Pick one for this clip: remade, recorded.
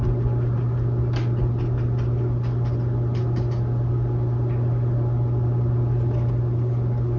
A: recorded